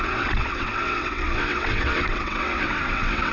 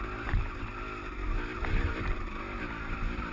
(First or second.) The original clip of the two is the second